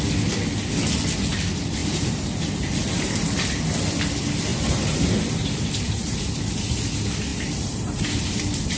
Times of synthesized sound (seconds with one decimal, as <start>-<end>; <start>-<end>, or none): 1.8-3.1; 4.5-6.3; 7.3-8.8